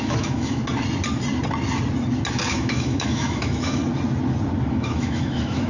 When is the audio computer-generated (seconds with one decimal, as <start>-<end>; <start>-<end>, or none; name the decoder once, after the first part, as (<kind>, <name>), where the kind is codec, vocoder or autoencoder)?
0.0-0.6 (autoencoder, DAC-VAE); 2.3-3.8; 4.7-5.7